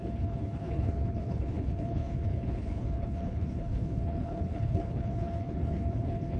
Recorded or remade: remade